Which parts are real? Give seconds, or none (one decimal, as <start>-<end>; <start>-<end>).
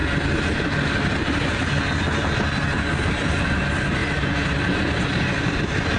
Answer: 0.0-6.0